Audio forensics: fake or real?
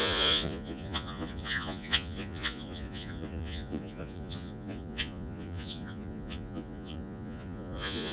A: fake